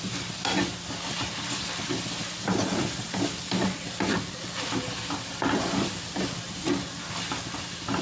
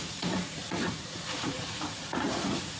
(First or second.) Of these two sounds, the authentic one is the first